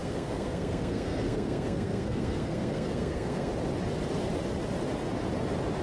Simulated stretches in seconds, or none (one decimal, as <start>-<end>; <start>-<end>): 0.0-3.5